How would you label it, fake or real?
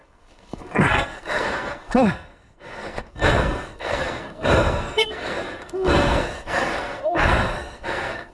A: fake